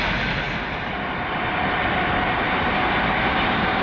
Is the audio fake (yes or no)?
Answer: no